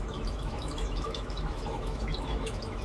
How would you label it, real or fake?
fake